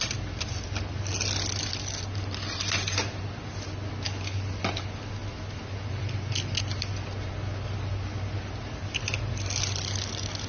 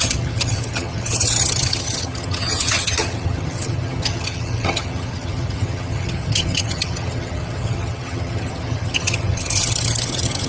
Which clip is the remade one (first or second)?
second